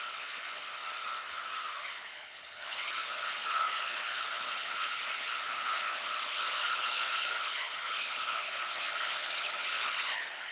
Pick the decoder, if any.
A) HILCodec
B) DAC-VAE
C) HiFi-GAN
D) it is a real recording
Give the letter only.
A